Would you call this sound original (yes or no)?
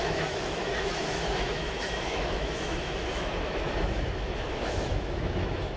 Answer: no